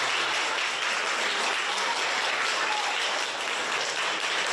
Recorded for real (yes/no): yes